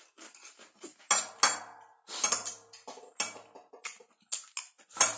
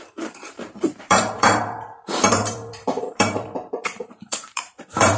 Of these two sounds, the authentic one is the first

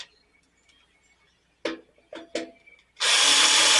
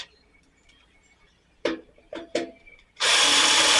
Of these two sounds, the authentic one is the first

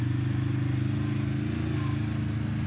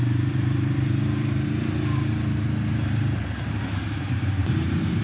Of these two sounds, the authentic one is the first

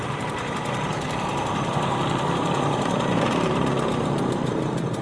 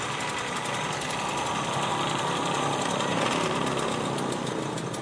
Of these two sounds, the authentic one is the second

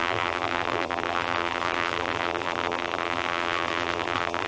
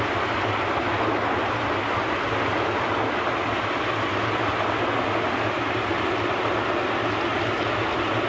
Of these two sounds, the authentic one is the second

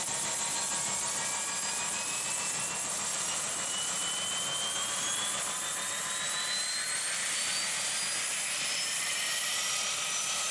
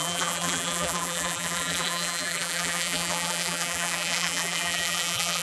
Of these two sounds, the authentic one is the first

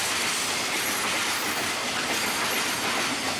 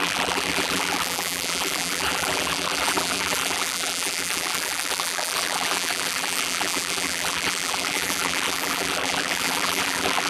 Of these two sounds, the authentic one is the first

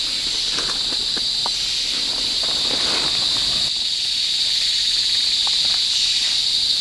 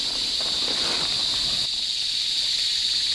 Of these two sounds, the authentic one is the first